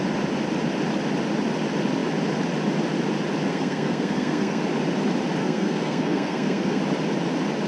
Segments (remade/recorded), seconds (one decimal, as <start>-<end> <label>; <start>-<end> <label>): 0.0-3.5 recorded; 3.5-4.6 remade; 4.6-5.4 recorded; 5.4-6.8 remade; 6.8-7.7 recorded

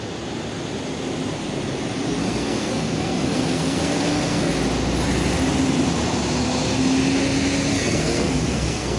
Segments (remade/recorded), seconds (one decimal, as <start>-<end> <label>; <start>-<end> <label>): 0.0-2.2 recorded; 2.2-4.5 remade; 4.5-7.7 recorded; 7.7-9.0 remade

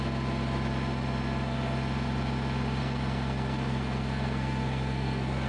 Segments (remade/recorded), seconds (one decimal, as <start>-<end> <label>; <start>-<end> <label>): 0.0-2.8 recorded; 2.8-5.5 remade

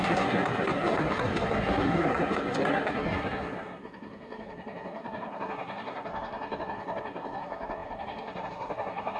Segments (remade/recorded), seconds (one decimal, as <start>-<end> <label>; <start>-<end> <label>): 0.0-9.2 remade

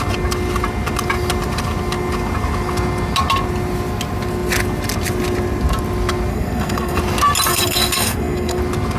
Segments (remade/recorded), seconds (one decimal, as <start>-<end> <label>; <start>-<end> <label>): 0.0-6.3 recorded; 6.3-7.0 remade; 7.0-7.5 recorded; 7.5-8.6 remade; 8.6-9.0 recorded

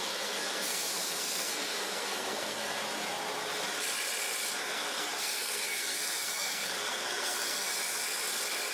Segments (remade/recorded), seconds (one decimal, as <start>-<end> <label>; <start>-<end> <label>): 0.0-2.8 remade; 2.8-4.6 recorded; 4.6-7.7 remade; 7.7-8.7 recorded